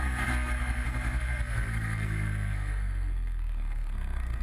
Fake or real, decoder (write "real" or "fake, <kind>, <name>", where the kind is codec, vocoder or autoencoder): fake, codec, SNAC